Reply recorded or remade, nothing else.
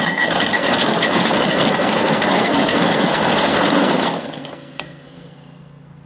remade